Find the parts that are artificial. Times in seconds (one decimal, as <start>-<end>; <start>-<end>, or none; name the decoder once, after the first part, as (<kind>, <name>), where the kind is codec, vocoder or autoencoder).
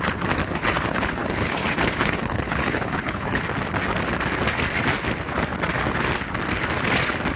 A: 0.4-3.4 (codec, HILCodec)